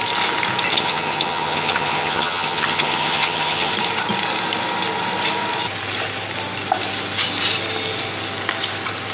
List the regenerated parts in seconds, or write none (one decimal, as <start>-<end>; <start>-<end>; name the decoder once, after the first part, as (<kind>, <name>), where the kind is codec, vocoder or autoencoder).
0.7-3.7 (vocoder, HiFi-GAN)

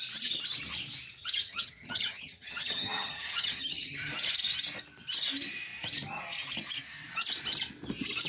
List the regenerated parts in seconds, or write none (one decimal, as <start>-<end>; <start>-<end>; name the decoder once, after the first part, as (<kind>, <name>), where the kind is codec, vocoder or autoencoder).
1.2-4.1 (vocoder, HiFi-GAN)

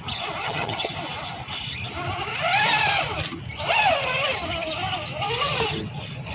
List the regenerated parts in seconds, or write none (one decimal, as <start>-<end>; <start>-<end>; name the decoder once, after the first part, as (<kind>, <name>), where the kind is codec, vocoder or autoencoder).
0.4-0.9 (vocoder, HiFi-GAN)

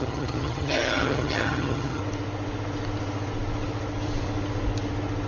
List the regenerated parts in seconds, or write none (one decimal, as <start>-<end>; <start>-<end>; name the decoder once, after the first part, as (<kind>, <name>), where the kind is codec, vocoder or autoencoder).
0.0-2.0 (vocoder, HiFi-GAN)

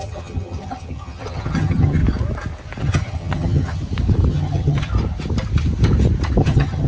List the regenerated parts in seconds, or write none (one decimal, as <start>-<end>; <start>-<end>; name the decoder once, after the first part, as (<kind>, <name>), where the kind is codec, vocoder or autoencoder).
0.0-2.0 (vocoder, HiFi-GAN); 2.8-3.8; 4.3-4.9; 6.4-6.9

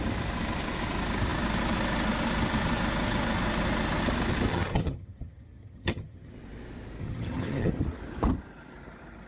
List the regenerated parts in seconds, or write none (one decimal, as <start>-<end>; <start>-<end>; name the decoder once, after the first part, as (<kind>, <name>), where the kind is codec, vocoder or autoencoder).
4.5-6.3 (vocoder, HiFi-GAN); 7.0-7.7